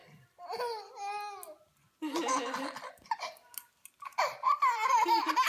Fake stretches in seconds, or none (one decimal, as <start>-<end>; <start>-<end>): 4.1-5.5